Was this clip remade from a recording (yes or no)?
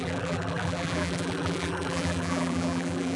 yes